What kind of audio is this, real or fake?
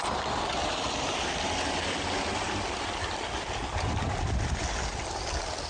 real